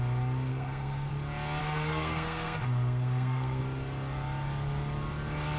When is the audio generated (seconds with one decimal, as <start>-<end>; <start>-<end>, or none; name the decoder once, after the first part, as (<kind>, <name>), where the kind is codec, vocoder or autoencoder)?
0.5-1.1 (codec, SNAC); 1.6-3.6